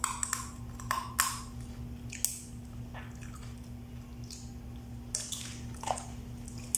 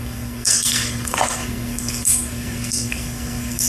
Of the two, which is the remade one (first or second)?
second